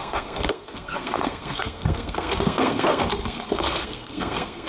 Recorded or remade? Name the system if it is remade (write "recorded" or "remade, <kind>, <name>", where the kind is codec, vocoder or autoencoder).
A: remade, codec, SNAC